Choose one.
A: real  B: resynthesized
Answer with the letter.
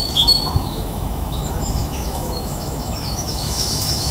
B